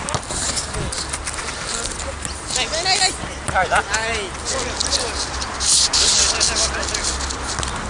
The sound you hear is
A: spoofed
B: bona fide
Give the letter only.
B